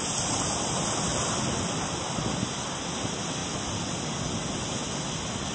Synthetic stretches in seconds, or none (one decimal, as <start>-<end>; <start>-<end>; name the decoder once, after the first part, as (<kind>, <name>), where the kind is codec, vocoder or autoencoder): 1.1-2.3 (vocoder, BigVGAN v2); 3.4-4.0